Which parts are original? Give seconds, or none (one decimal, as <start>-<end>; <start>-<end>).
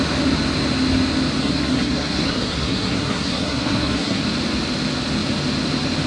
0.0-1.4; 4.2-6.1